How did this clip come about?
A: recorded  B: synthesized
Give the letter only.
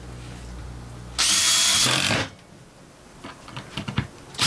A